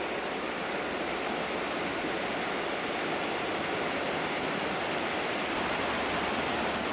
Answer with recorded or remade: recorded